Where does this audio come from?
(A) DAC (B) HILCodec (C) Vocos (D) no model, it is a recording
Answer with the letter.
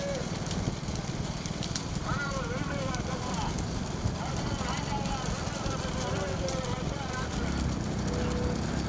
D